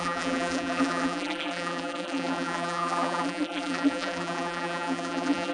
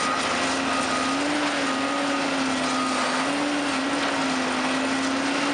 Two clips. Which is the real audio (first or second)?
second